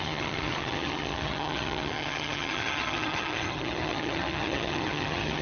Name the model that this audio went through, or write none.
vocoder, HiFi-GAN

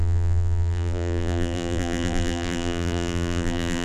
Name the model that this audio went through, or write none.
vocoder, BigVGAN v2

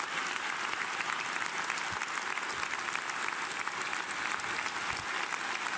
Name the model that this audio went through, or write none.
none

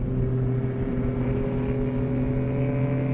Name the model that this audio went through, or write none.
none